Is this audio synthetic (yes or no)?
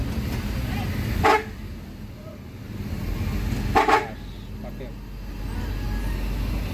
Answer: no